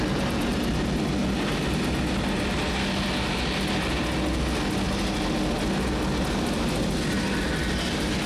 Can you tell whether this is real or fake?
real